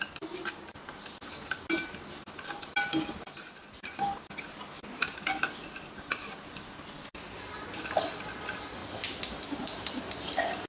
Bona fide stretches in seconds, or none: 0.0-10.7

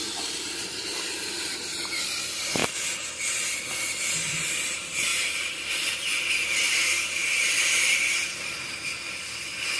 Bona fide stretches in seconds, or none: 2.6-3.3; 5.1-9.4

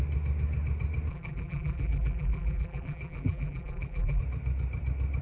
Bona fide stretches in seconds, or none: 0.0-1.1; 4.2-5.2

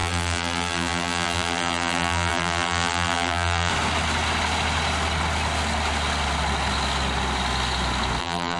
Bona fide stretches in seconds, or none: 3.7-8.2